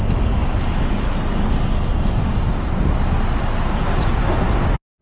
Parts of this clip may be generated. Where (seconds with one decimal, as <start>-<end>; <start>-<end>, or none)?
none